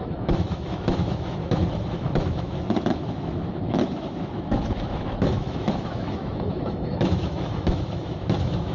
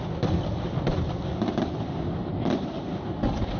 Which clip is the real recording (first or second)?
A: second